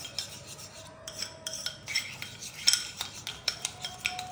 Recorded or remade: recorded